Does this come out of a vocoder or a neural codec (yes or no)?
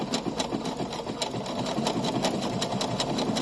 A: no